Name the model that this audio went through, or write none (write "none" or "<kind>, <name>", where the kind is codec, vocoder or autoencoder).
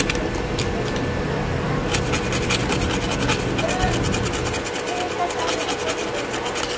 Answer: none